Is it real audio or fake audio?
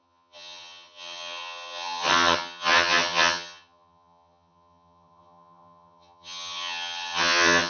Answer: fake